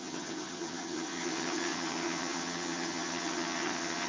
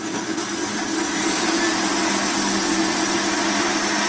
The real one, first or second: second